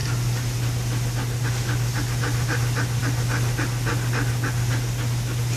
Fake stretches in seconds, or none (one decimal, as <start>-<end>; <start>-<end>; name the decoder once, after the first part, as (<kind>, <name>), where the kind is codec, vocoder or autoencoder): none